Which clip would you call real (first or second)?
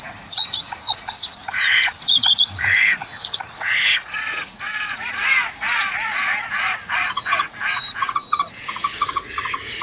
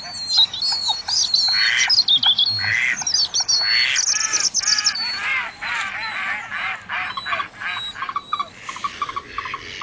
second